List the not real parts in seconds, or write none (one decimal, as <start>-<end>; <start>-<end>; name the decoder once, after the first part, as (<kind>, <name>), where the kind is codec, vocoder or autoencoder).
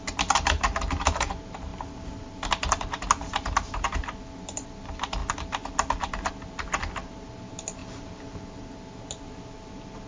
1.7-2.5 (vocoder, BigVGAN v2); 5.2-6.3